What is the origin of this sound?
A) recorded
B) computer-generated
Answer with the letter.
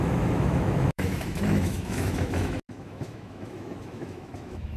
B